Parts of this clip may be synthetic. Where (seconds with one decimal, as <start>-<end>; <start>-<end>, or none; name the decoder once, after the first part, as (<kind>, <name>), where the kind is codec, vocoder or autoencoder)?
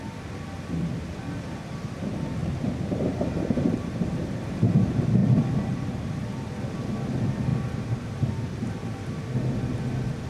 2.4-4.4 (vocoder, BigVGAN v2); 5.2-6.1; 7.5-8.9